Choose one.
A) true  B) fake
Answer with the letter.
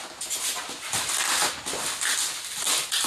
A